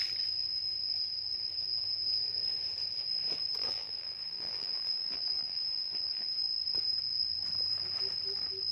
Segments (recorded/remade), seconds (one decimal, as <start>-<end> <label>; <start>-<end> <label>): 0.0-3.6 recorded; 3.6-6.3 remade; 6.3-8.7 recorded